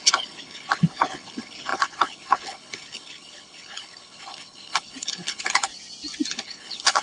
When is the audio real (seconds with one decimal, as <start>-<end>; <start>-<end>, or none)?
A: 5.7-6.3